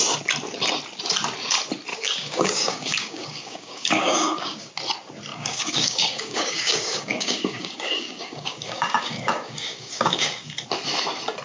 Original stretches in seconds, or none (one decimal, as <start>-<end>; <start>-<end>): 0.0-1.9; 4.7-5.3; 10.5-11.4